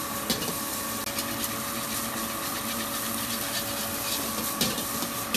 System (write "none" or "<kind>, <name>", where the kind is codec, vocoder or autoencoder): none